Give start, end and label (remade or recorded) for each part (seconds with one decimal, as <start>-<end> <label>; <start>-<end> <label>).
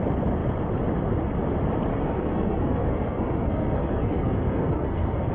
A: 0.0-1.9 recorded; 1.9-5.3 remade